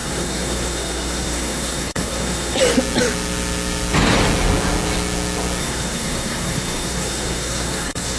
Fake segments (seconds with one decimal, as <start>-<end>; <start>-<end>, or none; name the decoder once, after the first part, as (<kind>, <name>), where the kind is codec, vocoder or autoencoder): 0.0-2.6 (codec, SNAC); 5.6-8.2